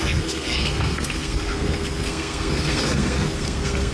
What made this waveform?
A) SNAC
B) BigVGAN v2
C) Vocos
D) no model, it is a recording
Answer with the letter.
A